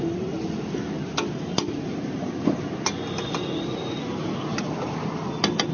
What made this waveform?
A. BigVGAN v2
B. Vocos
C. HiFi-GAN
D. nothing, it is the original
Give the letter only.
D